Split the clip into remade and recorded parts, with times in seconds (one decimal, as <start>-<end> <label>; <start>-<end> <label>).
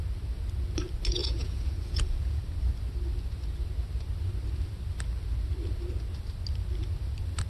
0.0-1.2 recorded; 1.2-2.4 remade; 2.4-7.5 recorded